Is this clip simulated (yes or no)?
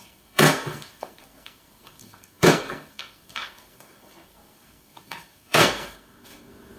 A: yes